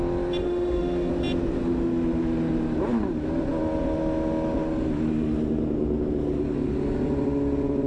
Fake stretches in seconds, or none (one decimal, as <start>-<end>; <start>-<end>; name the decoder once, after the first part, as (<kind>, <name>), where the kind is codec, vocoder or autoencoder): 0.4-1.1 (autoencoder, DAC-VAE)